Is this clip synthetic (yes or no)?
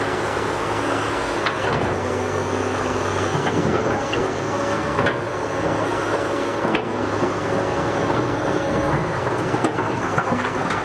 yes